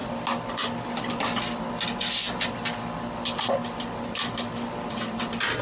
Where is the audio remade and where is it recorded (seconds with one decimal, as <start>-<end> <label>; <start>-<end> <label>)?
0.0-5.6 recorded